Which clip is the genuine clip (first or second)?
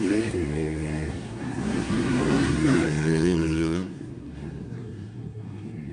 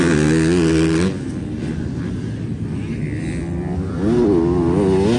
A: second